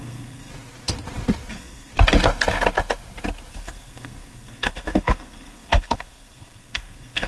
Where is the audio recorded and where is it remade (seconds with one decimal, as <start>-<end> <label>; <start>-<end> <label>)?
0.0-0.5 remade; 0.5-1.5 recorded; 1.5-1.9 remade; 1.9-3.5 recorded; 3.5-7.3 remade